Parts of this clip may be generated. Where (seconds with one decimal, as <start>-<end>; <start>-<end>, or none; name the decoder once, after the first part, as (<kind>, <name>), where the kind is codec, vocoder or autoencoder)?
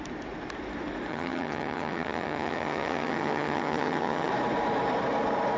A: 1.1-4.3 (vocoder, HiFi-GAN)